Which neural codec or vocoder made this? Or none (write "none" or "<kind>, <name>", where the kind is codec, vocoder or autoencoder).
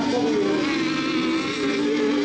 none